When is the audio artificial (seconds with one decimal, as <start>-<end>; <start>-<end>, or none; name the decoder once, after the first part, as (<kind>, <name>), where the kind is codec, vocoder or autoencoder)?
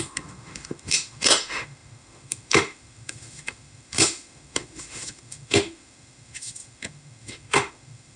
0.0-8.2 (autoencoder, DAC-VAE)